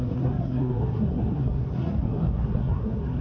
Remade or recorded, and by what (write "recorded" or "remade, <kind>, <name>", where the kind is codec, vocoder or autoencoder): remade, codec, SNAC